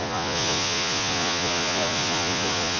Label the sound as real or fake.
fake